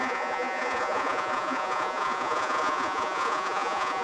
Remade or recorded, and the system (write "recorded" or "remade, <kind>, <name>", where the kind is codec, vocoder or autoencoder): remade, vocoder, Vocos